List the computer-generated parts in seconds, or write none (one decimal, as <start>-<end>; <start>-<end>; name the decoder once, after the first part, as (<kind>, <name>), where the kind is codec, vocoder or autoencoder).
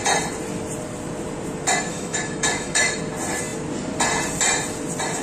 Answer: 1.9-3.0 (autoencoder, DAC-VAE)